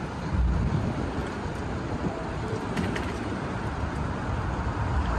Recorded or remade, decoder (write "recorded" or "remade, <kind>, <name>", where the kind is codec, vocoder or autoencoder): remade, vocoder, BigVGAN v2